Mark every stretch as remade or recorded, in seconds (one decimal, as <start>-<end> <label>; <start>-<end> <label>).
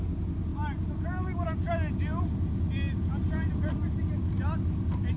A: 0.0-5.2 recorded